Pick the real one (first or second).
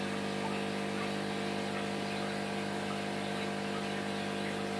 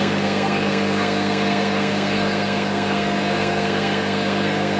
first